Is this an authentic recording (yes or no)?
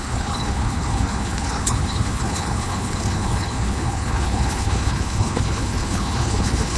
no